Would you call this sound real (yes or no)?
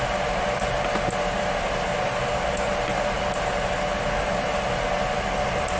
yes